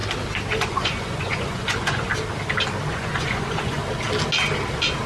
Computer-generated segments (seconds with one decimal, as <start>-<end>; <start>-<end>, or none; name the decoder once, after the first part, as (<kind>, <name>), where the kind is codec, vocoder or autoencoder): 0.5-2.1 (vocoder, Vocos); 2.9-3.8